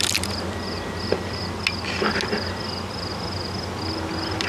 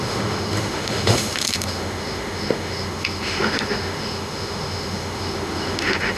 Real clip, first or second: first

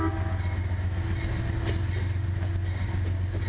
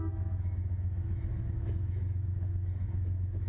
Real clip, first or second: first